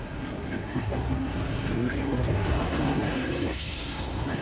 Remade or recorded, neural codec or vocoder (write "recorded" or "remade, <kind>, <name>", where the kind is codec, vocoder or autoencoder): remade, codec, SNAC